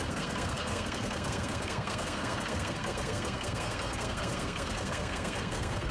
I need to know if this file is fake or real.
fake